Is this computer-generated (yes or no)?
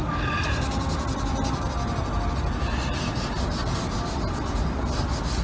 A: no